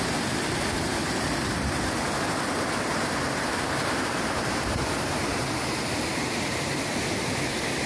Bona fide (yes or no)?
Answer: yes